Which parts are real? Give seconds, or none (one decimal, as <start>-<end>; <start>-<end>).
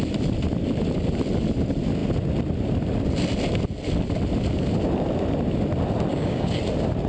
0.0-6.1; 6.6-7.1